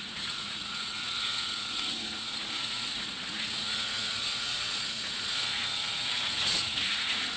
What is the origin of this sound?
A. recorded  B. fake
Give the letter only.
B